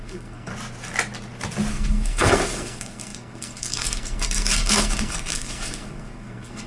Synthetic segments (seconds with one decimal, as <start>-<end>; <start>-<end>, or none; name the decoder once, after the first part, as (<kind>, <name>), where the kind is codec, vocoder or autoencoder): 0.0-0.5 (codec, SNAC); 1.7-6.7